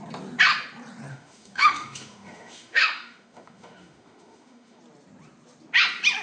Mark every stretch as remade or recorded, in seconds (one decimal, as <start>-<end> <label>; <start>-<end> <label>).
0.0-1.1 recorded; 1.1-4.8 remade; 4.8-6.2 recorded